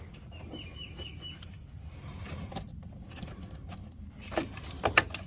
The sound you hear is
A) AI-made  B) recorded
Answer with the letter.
B